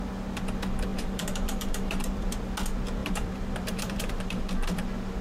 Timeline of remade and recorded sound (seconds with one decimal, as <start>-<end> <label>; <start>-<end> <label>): 0.0-0.9 recorded; 0.9-2.4 remade; 2.4-3.0 recorded; 3.0-4.4 remade; 4.4-5.2 recorded